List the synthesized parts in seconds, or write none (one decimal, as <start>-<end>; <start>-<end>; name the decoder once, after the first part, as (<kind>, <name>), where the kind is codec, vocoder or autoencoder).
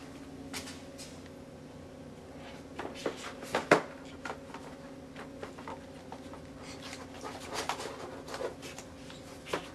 none